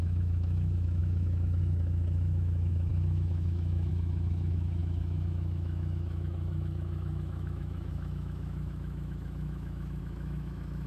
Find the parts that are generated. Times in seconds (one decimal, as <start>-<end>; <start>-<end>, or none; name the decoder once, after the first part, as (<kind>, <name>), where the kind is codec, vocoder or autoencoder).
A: 0.0-10.9 (autoencoder, DAC-VAE)